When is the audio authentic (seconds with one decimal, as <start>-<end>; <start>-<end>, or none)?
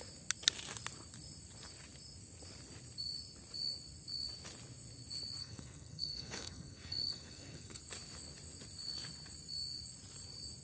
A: 0.0-5.4; 7.8-10.6